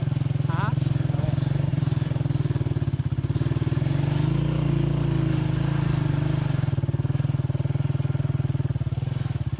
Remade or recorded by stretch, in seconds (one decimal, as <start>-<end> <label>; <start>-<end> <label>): 0.0-1.7 recorded; 1.7-2.7 remade; 2.7-9.6 recorded